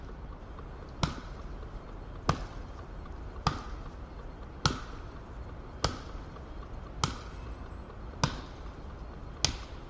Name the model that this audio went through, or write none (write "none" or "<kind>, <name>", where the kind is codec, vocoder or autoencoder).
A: none